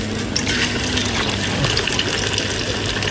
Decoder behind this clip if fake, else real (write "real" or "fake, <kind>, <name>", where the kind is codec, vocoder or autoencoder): real